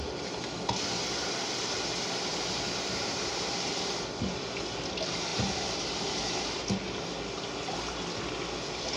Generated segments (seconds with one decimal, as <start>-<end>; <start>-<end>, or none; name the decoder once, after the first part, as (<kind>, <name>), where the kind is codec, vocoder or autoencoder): 2.3-3.7 (vocoder, BigVGAN v2); 5.3-6.6

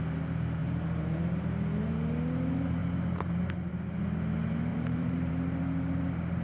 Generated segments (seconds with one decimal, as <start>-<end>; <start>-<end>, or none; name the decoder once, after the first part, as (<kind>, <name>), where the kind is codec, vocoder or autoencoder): 0.6-1.3 (vocoder, BigVGAN v2); 4.7-5.3

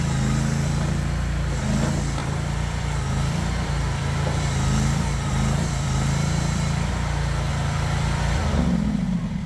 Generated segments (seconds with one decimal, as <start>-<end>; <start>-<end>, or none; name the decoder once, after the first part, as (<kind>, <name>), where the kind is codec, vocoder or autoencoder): 2.2-6.9 (vocoder, BigVGAN v2); 7.5-8.6

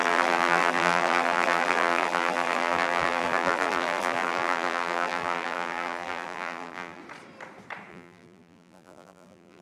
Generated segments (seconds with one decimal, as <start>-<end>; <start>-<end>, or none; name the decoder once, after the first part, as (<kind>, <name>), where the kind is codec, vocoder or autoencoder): 0.0-7.0 (vocoder, BigVGAN v2); 7.9-9.6

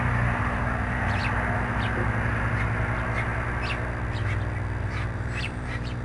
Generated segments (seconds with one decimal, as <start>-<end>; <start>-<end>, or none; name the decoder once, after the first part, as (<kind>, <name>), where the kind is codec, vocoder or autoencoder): 0.0-1.2 (vocoder, BigVGAN v2); 4.8-6.0

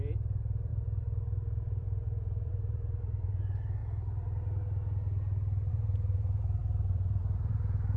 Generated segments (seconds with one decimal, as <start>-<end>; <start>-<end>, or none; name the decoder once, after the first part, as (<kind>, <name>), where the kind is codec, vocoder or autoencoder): 0.0-3.8 (vocoder, BigVGAN v2); 5.7-8.0

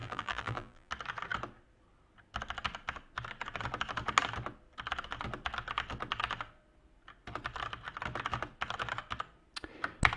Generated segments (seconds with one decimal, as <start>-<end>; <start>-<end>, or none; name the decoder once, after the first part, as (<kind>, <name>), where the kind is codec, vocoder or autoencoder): 0.0-0.9 (vocoder, BigVGAN v2)